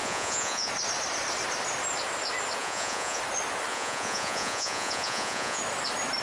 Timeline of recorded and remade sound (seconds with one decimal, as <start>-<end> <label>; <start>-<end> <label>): 0.0-0.7 remade; 0.7-2.6 recorded; 2.6-3.2 remade; 3.2-3.7 recorded; 3.7-5.6 remade; 5.6-6.2 recorded